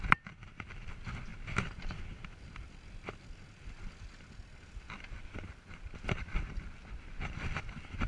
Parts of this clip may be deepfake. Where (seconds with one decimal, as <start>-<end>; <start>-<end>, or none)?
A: none